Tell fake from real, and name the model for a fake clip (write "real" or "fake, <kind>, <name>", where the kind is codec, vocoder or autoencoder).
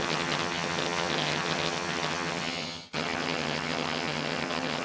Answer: fake, vocoder, HiFi-GAN